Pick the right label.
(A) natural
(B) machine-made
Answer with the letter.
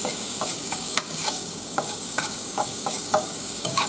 B